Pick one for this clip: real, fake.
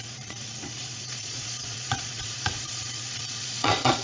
fake